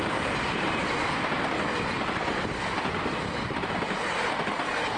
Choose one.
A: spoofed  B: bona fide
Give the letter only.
B